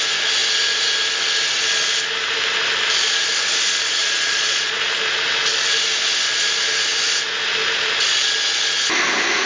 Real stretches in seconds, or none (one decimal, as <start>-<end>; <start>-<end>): 0.0-4.0; 4.8-9.5